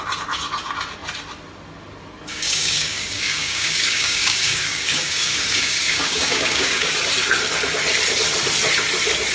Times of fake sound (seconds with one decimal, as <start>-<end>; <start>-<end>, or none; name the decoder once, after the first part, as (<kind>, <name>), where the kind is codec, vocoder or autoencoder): 2.3-6.9 (codec, DAC)